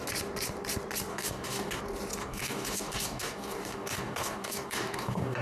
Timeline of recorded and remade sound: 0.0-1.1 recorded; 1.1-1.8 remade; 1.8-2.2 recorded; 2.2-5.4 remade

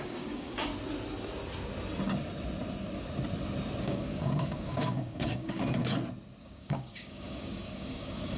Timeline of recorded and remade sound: 0.0-0.7 remade; 0.7-3.8 recorded; 3.8-5.9 remade; 5.9-6.4 recorded; 6.4-8.4 remade